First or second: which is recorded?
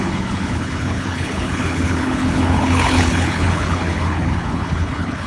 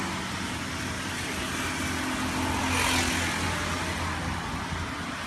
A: second